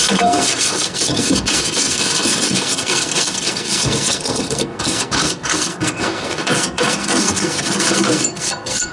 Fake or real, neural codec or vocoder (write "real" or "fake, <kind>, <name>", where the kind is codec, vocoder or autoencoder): fake, codec, SNAC